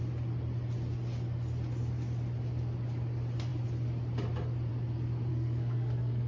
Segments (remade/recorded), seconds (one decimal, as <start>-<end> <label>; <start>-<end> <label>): 0.0-5.3 recorded; 5.3-6.3 remade